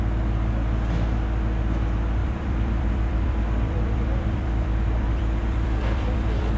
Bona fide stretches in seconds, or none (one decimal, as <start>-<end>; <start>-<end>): 0.0-2.2